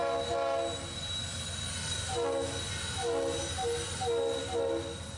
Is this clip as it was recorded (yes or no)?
yes